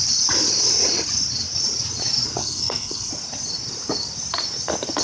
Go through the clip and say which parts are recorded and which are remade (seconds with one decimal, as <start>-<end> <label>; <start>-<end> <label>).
0.0-2.4 recorded; 2.4-3.1 remade; 3.1-5.0 recorded